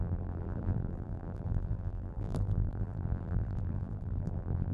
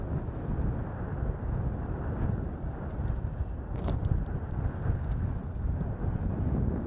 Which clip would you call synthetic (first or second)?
first